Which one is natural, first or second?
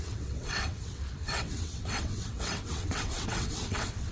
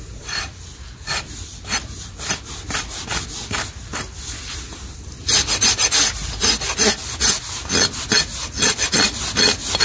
second